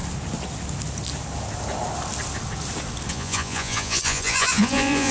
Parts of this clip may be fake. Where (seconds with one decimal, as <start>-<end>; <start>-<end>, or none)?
3.1-5.1